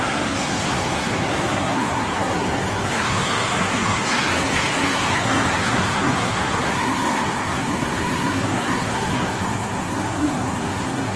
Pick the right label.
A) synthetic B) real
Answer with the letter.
A